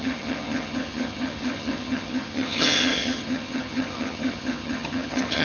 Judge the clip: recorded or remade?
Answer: remade